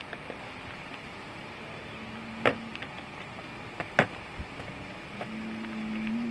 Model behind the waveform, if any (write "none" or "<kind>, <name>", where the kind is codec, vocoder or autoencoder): none